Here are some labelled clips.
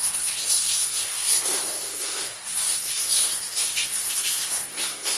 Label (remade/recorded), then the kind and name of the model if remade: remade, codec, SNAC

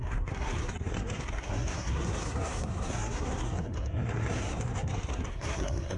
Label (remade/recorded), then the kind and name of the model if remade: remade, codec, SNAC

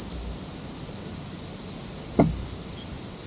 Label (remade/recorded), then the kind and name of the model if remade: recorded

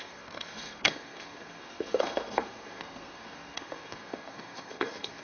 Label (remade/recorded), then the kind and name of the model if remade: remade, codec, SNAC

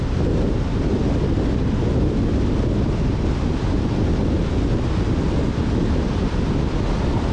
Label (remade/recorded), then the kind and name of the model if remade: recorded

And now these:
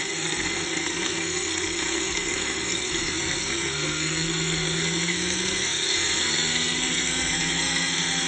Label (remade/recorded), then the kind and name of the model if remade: remade, codec, SNAC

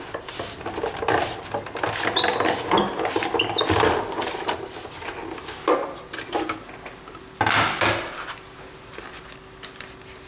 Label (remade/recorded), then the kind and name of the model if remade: recorded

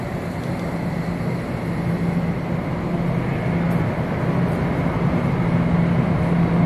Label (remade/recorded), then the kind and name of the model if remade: recorded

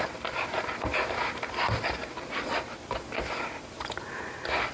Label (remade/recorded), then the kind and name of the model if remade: recorded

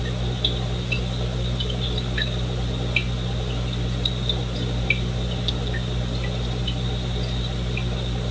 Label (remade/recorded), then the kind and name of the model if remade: recorded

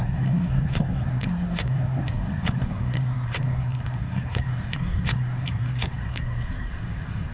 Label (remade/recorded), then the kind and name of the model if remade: remade, codec, SNAC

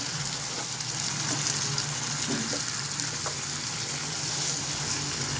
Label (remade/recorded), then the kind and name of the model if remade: recorded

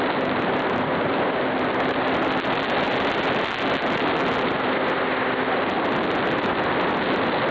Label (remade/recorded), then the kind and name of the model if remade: recorded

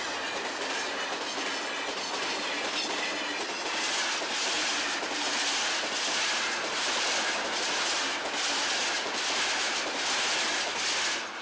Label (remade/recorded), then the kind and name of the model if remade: recorded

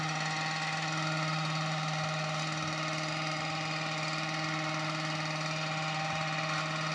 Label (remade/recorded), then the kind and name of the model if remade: recorded